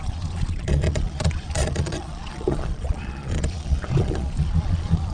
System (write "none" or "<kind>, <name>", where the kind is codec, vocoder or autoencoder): vocoder, Vocos